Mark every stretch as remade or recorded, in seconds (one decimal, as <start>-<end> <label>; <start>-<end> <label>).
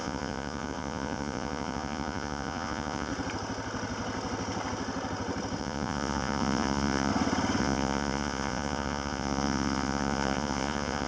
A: 0.0-3.1 remade; 3.1-5.6 recorded; 5.6-7.1 remade; 7.1-7.6 recorded; 7.6-11.1 remade